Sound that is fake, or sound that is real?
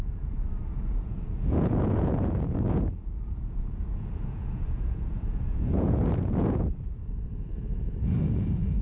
fake